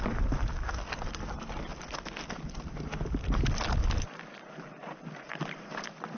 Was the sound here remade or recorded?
recorded